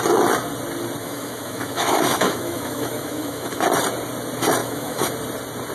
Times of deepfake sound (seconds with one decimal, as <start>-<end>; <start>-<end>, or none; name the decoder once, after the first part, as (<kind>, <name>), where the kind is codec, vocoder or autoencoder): 1.0-3.6 (autoencoder, DAC-VAE); 4.6-5.1